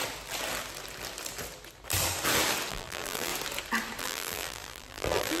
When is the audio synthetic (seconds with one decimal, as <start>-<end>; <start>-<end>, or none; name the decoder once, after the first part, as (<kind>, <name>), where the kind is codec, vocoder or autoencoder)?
2.7-3.3 (vocoder, BigVGAN v2); 4.0-5.4